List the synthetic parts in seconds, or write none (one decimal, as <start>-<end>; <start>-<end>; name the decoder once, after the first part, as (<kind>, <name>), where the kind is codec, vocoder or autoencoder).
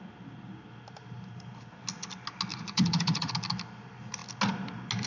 2.5-3.3 (vocoder, Vocos)